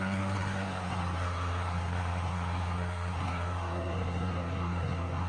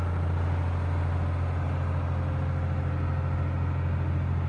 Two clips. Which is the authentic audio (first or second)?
second